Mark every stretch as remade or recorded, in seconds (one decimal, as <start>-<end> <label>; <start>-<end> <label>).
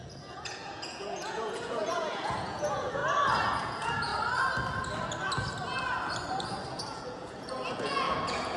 0.0-3.0 remade; 3.0-3.6 recorded; 3.6-4.1 remade; 4.1-6.7 recorded; 6.7-8.6 remade